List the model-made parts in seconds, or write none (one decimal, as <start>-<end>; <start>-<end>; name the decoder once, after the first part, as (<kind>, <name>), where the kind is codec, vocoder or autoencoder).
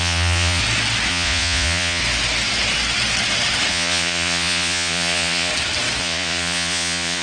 0.0-0.6 (vocoder, Vocos); 1.1-2.0; 3.7-5.5; 6.0-7.2